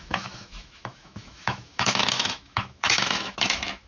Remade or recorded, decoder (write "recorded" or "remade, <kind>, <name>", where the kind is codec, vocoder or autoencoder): remade, autoencoder, DAC-VAE